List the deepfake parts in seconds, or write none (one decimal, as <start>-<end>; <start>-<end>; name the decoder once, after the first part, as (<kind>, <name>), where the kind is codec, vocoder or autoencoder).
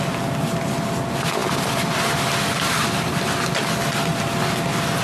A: none